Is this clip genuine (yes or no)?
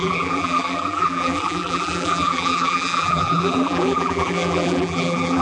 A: no